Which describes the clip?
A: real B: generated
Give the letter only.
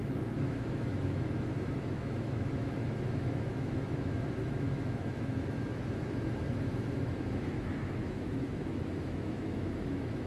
B